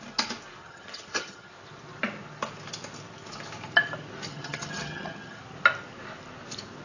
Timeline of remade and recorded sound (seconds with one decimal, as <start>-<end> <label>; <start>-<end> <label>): 0.0-0.6 recorded; 0.6-1.5 remade; 1.5-4.3 recorded; 4.3-5.4 remade; 5.4-6.8 recorded